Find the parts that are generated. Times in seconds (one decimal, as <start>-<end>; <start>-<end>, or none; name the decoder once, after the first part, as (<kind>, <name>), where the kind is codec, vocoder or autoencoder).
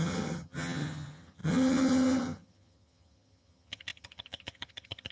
0.0-5.1 (vocoder, HiFi-GAN)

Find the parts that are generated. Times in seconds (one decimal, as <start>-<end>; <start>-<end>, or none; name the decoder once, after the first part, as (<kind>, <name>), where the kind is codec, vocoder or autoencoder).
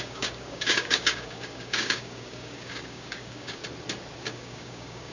0.0-3.6 (codec, DAC); 4.2-5.1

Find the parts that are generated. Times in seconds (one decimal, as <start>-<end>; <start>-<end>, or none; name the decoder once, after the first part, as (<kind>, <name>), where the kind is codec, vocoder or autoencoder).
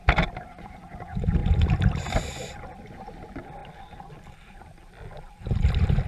0.0-0.9 (vocoder, BigVGAN v2); 1.4-2.5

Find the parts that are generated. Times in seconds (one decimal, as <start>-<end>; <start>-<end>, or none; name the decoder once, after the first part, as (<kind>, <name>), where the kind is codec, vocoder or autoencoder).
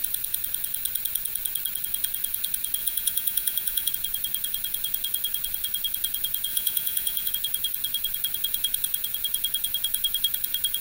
2.8-3.9 (vocoder, Vocos); 6.5-7.3